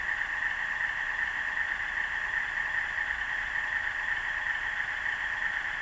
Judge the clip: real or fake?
real